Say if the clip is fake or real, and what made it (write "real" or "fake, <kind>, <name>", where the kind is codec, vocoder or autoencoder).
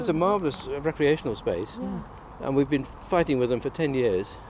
real